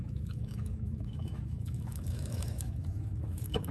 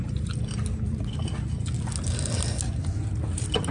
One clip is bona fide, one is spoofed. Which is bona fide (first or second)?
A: second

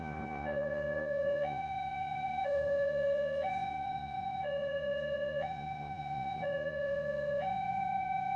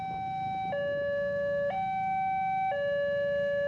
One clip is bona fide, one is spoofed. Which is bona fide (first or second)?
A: second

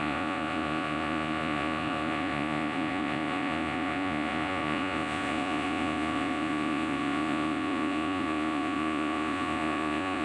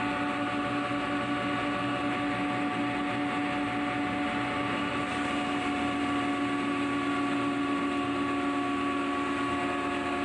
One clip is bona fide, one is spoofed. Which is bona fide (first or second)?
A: second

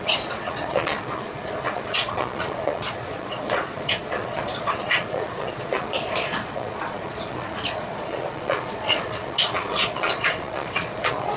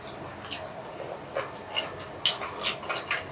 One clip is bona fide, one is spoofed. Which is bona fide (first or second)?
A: second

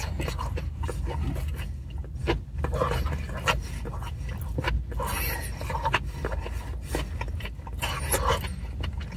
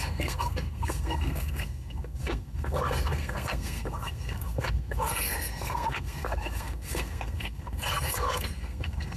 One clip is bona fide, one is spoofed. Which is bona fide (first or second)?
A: first